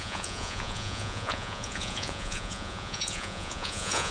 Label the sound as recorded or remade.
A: remade